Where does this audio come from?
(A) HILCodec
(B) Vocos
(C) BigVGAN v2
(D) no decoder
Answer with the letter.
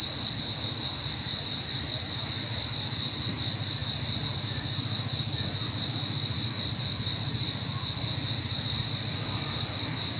D